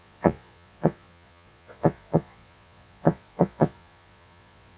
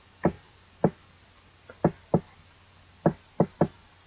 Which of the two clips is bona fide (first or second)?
second